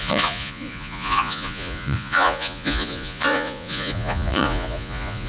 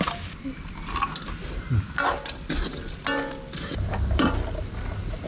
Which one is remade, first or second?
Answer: first